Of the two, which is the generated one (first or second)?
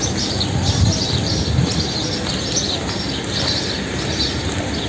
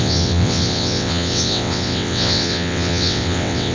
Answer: second